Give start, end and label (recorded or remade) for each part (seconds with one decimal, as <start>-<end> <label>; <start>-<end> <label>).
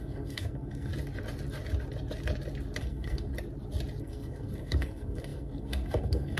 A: 0.0-0.9 remade; 0.9-2.8 recorded; 2.8-3.3 remade; 3.3-4.0 recorded; 4.0-6.4 remade